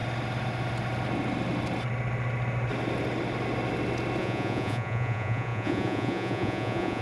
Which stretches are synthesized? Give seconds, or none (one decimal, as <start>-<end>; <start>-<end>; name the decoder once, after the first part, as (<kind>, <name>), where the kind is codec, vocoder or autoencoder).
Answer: 4.2-7.0 (vocoder, Vocos)